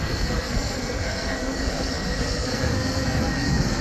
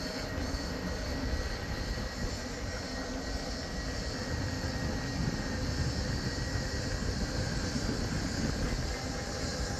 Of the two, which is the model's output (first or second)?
first